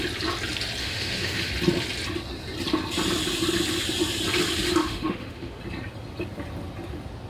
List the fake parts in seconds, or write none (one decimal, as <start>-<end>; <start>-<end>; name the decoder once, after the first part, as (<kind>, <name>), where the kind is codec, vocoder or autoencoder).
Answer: 0.8-1.5 (autoencoder, DAC-VAE); 4.8-5.6